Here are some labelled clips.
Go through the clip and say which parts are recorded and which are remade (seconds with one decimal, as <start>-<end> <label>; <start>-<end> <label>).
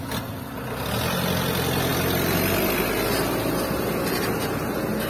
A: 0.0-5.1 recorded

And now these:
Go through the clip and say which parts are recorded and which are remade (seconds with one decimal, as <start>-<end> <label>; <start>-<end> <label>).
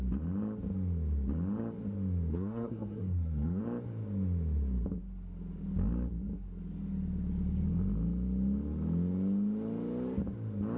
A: 0.0-2.3 recorded; 2.3-3.6 remade; 3.6-10.8 recorded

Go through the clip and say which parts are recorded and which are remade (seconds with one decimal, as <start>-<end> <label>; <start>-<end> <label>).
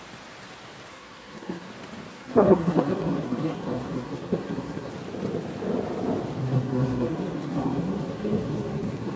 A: 0.0-0.9 recorded; 0.9-1.7 remade; 1.7-2.1 recorded; 2.1-4.9 remade; 4.9-6.4 recorded; 6.4-9.2 remade